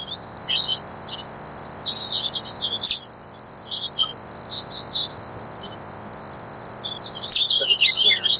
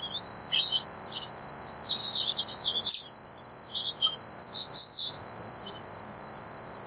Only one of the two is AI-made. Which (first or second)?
second